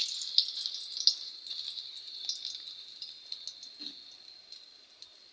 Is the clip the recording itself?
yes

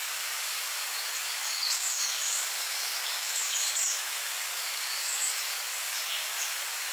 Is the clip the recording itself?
no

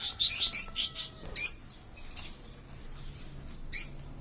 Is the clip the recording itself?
yes